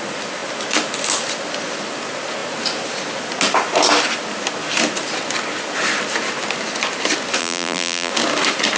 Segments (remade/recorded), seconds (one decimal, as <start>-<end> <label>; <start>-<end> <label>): 0.0-7.4 recorded; 7.4-8.1 remade; 8.1-8.8 recorded

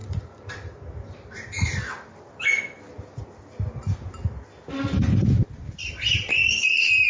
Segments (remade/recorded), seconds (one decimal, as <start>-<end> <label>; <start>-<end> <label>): 0.0-1.8 remade; 1.8-6.4 recorded; 6.4-7.1 remade

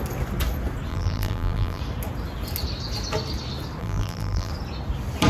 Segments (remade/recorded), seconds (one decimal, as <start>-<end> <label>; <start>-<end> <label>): 0.0-0.9 recorded; 0.9-1.8 remade; 1.8-3.8 recorded; 3.8-4.5 remade; 4.5-5.3 recorded

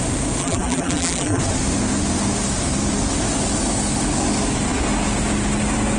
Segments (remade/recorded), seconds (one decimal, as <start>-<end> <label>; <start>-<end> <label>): 0.0-0.4 recorded; 0.4-1.4 remade; 1.4-6.0 recorded

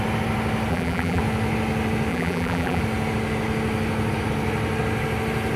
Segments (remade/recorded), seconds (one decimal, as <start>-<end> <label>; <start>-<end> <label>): 0.0-0.7 recorded; 0.7-1.2 remade; 1.2-2.1 recorded; 2.1-2.8 remade; 2.8-5.6 recorded

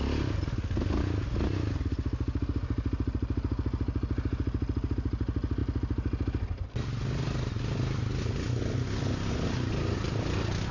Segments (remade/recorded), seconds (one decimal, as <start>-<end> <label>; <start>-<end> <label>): 0.0-10.7 recorded

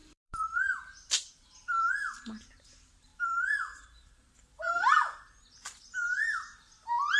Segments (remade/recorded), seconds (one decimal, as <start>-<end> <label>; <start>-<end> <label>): 0.0-1.9 remade; 1.9-3.1 recorded; 3.1-5.4 remade; 5.4-7.2 recorded

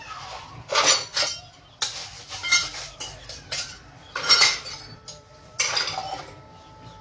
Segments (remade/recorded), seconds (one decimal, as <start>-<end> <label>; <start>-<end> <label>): 0.0-2.4 recorded; 2.4-6.3 remade; 6.3-7.0 recorded